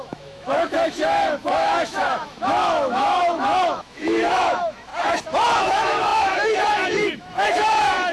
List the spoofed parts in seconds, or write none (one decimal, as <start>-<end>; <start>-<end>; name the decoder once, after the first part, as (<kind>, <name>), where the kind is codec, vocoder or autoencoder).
0.0-4.9 (autoencoder, DAC-VAE); 5.6-8.1